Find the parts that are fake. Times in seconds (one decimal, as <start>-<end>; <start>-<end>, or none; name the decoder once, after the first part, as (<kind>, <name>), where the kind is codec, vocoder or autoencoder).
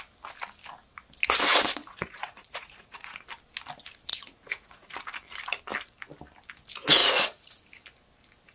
1.8-3.2 (vocoder, Vocos); 4.1-5.0; 7.0-7.5